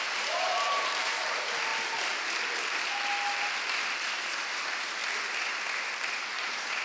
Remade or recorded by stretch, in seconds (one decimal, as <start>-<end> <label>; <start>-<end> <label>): 0.0-1.7 remade; 1.7-4.0 recorded; 4.0-5.0 remade; 5.0-5.5 recorded; 5.5-6.8 remade